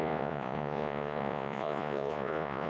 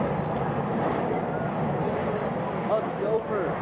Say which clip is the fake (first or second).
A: first